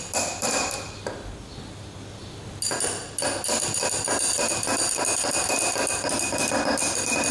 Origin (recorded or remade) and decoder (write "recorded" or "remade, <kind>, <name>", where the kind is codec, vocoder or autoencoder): recorded